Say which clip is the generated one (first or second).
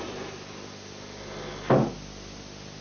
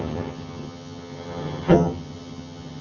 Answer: second